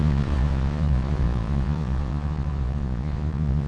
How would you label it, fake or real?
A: fake